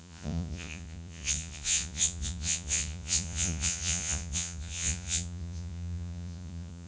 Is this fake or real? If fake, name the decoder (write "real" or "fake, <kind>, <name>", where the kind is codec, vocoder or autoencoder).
fake, vocoder, Vocos